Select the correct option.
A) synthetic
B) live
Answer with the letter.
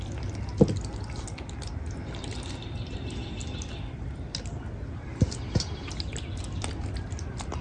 B